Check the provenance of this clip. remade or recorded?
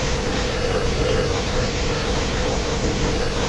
remade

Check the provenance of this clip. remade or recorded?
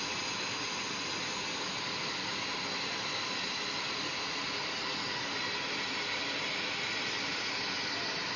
recorded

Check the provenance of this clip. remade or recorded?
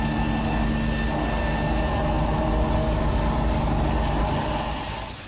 recorded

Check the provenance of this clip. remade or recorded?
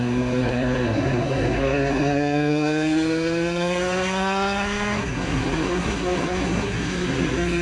remade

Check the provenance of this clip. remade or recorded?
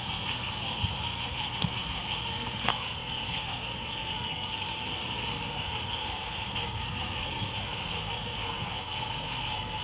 remade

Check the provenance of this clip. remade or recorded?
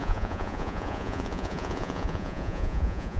remade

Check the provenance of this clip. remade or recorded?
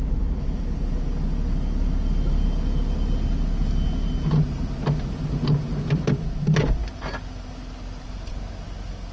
recorded